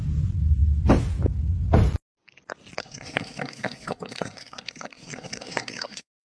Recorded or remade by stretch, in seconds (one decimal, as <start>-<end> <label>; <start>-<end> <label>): 0.0-2.8 recorded; 2.8-6.2 remade